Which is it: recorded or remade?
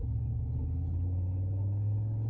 remade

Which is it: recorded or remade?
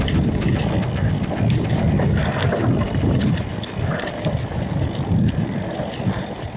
recorded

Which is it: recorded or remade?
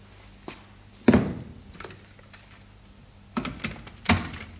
recorded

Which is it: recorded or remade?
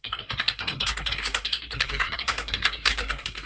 remade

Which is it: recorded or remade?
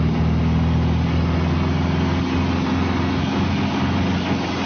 recorded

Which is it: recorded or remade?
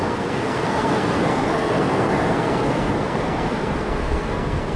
remade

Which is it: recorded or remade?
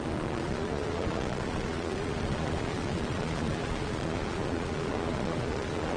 remade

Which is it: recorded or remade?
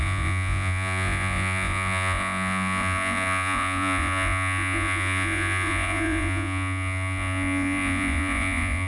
remade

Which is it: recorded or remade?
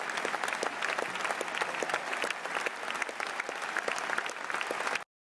recorded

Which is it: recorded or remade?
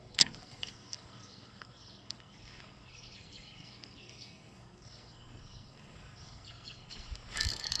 remade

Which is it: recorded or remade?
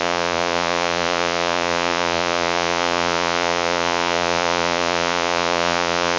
remade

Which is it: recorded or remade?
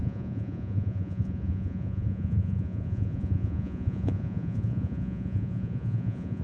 remade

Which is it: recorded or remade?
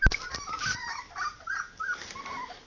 recorded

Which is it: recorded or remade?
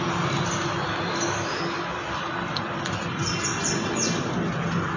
recorded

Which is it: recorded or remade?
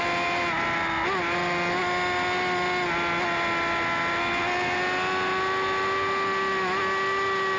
recorded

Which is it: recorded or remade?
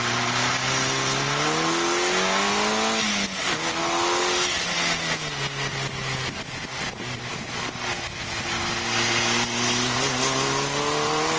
recorded